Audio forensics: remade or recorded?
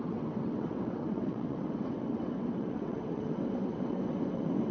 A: remade